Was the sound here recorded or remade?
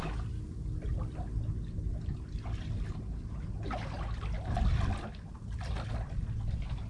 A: recorded